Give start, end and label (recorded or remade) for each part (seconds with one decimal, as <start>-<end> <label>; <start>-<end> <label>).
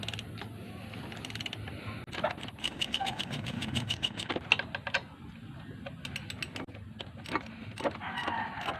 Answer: 0.0-2.6 recorded; 2.6-4.3 remade; 4.3-8.8 recorded